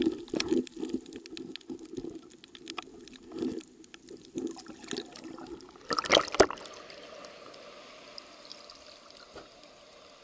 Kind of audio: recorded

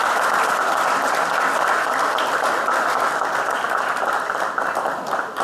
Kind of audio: recorded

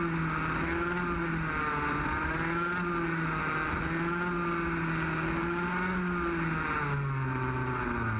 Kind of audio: recorded